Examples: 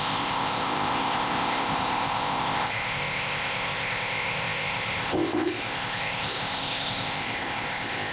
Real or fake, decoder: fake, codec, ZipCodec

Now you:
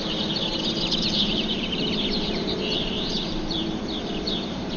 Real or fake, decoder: fake, vocoder, BigVGAN v2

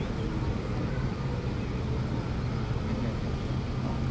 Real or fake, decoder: real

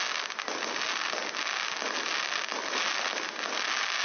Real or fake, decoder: real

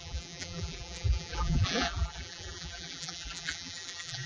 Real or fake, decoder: fake, vocoder, BigVGAN v2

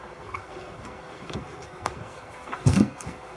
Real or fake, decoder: fake, codec, SNAC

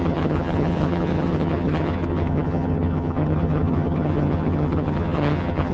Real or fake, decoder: fake, vocoder, HiFi-GAN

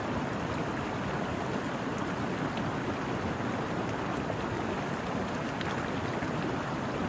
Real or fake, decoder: real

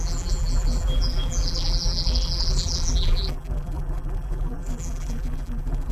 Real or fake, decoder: fake, vocoder, BigVGAN v2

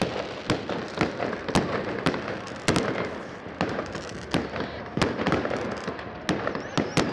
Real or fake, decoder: real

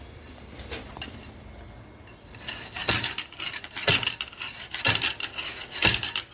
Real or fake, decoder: real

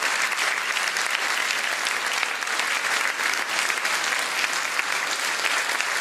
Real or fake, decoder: real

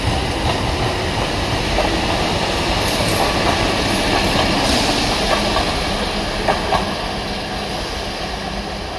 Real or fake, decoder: real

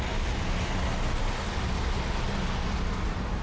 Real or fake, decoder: real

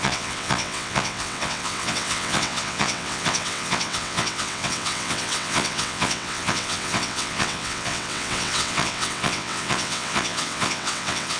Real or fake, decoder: fake, vocoder, WaveNeXt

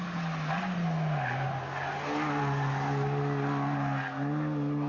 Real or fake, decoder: real